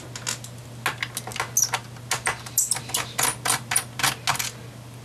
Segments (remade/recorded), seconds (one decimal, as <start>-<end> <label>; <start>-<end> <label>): 0.0-5.0 recorded